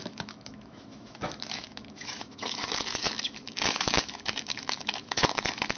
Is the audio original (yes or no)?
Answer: no